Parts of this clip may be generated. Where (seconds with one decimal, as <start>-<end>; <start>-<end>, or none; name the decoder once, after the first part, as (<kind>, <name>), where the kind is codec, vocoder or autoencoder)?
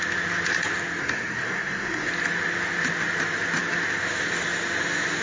1.0-2.1 (codec, SNAC)